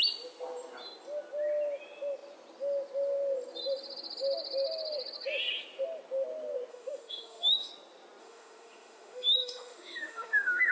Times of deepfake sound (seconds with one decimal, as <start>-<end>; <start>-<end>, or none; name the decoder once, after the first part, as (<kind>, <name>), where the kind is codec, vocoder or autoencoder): 6.7-7.7 (autoencoder, DAC-VAE); 8.2-10.7